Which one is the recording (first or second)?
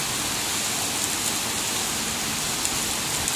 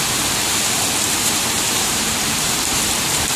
first